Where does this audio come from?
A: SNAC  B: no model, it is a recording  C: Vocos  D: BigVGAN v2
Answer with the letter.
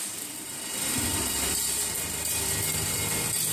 D